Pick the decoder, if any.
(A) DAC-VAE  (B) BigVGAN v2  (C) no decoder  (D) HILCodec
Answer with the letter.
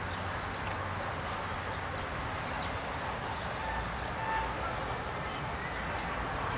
C